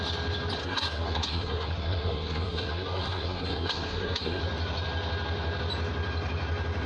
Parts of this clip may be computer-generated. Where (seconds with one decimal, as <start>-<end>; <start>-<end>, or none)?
0.6-4.4